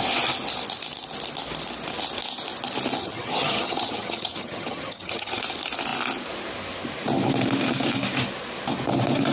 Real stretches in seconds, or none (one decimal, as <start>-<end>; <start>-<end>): 0.0-3.0; 5.4-9.3